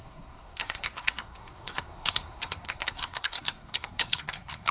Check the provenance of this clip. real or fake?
fake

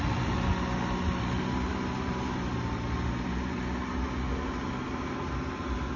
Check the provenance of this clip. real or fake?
real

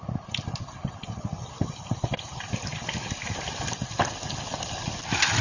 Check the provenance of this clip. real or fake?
real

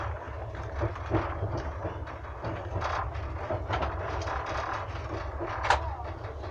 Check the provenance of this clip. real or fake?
real